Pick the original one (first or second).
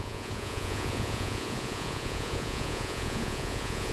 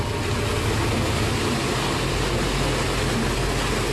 second